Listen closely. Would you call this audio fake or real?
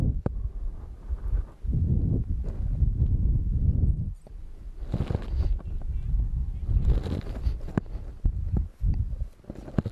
real